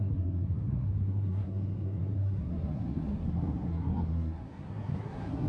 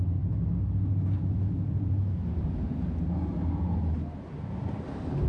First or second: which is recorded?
second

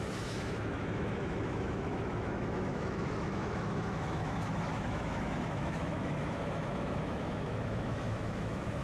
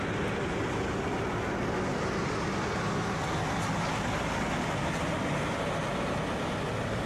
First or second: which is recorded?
second